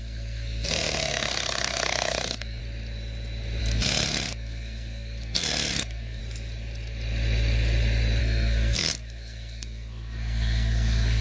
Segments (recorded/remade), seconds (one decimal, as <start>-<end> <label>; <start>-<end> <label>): 0.0-2.6 remade; 2.6-3.6 recorded; 3.6-6.2 remade; 6.2-8.2 recorded; 8.2-11.2 remade